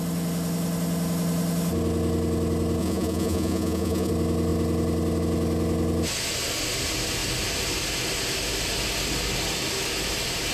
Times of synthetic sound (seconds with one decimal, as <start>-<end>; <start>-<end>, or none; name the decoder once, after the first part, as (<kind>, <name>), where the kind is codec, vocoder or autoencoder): 2.8-4.1 (vocoder, Vocos)